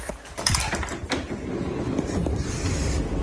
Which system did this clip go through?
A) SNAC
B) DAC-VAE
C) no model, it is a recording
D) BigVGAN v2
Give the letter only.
D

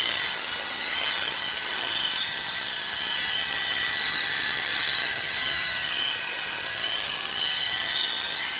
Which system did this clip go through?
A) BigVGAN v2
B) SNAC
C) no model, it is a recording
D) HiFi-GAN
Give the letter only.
D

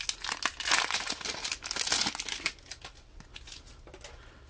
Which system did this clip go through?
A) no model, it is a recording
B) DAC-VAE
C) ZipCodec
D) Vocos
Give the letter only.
A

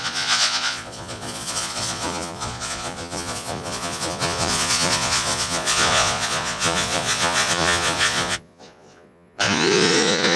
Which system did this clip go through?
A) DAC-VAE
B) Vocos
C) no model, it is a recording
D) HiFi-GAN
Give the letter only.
B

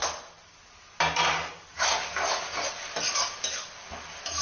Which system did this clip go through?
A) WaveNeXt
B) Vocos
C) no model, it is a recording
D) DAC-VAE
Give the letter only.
C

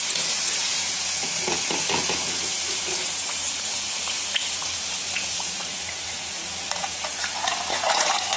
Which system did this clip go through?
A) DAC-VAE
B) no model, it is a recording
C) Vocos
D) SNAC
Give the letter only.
C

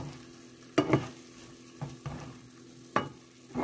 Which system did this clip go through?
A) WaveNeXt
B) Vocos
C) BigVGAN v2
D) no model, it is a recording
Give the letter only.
D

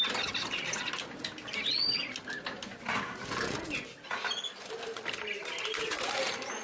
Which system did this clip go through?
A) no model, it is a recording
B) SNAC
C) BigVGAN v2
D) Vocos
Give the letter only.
A